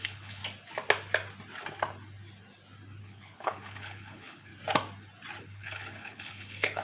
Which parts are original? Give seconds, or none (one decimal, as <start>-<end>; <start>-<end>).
0.4-3.0; 4.5-5.4